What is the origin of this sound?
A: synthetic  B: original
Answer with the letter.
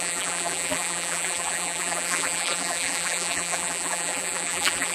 A